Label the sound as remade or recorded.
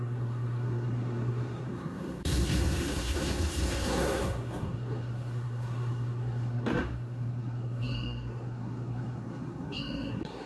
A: remade